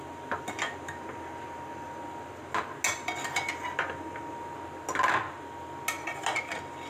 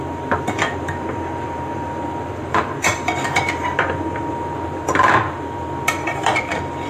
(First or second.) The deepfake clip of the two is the second